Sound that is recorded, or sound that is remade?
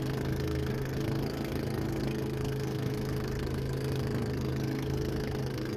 remade